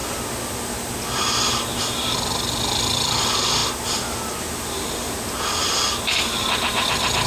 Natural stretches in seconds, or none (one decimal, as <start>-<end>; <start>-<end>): 0.0-7.3